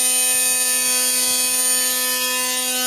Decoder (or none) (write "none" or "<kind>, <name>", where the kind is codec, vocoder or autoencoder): none